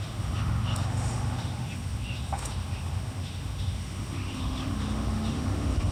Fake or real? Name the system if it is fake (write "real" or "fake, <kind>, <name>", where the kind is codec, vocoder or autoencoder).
fake, autoencoder, DAC-VAE